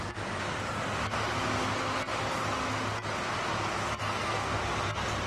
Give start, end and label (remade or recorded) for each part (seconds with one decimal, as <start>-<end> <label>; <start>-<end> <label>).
0.0-4.0 recorded; 4.0-4.6 remade; 4.6-5.3 recorded

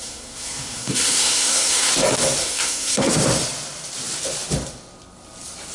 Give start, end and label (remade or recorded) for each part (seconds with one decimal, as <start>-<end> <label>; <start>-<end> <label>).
0.0-1.9 remade; 1.9-2.4 recorded; 2.4-3.1 remade; 3.1-5.7 recorded

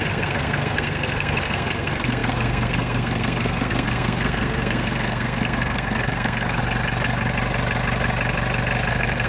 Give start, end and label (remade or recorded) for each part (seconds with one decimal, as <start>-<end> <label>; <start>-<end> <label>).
0.0-6.6 remade; 6.6-8.9 recorded; 8.9-9.3 remade

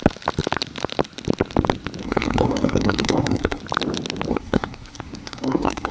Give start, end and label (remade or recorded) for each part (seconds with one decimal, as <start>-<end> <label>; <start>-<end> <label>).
0.0-2.0 recorded; 2.0-3.6 remade; 3.6-4.3 recorded; 4.3-5.9 remade

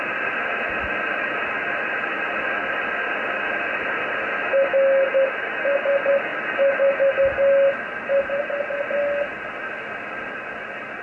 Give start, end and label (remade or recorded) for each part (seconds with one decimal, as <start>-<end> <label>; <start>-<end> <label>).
0.0-11.0 recorded

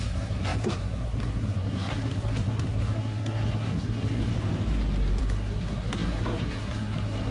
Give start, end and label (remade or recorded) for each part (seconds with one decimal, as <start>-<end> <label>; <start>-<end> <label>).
0.0-4.3 remade; 4.3-5.2 recorded; 5.2-7.3 remade